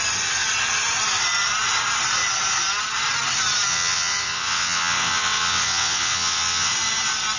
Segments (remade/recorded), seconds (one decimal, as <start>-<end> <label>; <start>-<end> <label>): 0.0-3.7 recorded; 3.7-6.7 remade; 6.7-7.4 recorded